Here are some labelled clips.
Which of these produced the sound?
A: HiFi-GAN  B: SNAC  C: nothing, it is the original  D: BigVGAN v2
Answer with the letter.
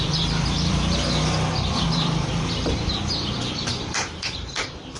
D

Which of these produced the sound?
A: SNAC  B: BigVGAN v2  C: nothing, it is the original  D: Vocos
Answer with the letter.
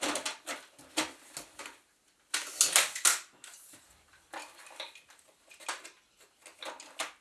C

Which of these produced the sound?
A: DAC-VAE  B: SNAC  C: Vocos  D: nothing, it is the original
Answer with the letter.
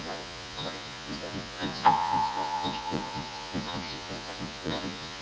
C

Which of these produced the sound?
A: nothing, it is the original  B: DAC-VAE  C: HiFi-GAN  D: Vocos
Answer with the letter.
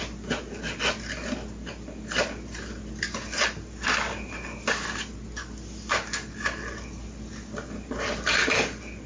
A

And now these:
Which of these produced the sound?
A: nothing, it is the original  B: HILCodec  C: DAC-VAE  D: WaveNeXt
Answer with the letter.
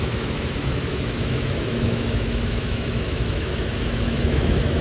C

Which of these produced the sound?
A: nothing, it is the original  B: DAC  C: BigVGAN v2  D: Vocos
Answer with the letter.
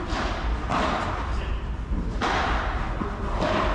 C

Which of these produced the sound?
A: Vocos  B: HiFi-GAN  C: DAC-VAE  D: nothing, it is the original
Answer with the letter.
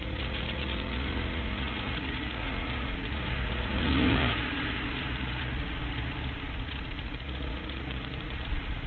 A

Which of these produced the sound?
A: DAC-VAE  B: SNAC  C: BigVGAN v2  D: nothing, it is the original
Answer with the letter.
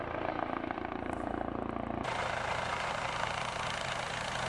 D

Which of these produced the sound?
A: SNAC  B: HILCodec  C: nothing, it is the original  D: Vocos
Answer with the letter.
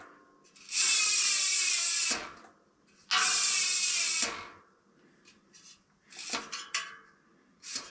C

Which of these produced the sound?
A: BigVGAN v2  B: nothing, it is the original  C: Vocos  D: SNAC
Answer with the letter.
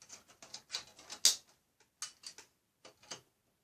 B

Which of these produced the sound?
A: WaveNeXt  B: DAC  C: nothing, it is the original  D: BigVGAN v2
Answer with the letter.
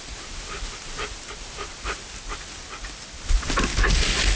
C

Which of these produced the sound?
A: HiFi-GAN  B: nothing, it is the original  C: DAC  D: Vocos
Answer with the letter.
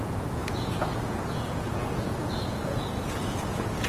D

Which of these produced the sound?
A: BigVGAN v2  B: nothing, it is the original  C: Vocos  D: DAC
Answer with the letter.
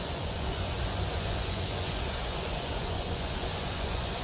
C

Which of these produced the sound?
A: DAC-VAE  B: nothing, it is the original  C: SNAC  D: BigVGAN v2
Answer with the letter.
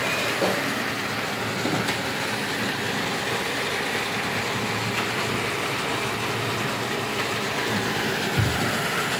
B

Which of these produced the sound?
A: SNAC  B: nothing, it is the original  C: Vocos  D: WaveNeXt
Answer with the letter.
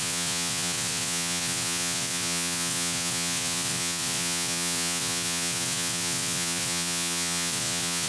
C